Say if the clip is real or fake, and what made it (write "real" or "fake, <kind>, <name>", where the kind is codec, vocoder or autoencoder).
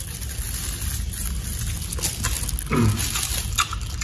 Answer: real